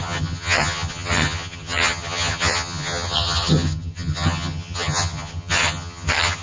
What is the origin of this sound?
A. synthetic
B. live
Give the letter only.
A